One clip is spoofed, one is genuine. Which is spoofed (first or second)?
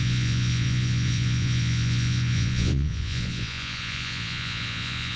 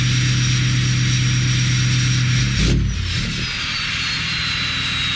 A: first